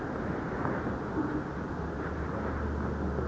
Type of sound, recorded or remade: recorded